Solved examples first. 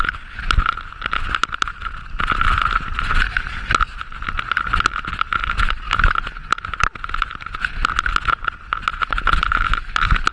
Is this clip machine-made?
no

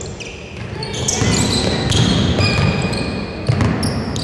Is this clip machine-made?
no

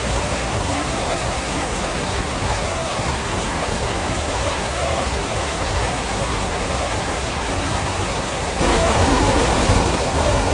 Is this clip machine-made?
yes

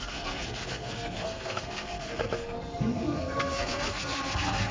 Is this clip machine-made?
yes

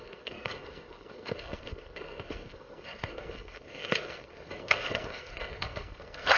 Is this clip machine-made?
yes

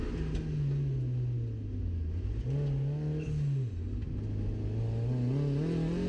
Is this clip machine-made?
no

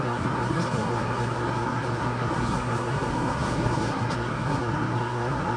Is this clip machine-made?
yes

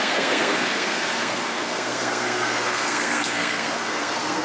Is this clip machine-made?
yes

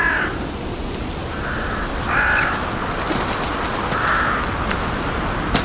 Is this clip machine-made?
no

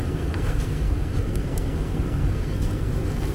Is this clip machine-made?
yes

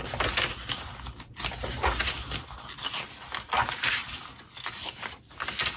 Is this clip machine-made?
no